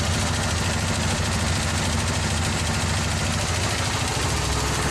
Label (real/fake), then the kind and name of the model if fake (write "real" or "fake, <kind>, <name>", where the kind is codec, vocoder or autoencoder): real